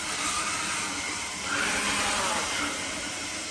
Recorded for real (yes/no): yes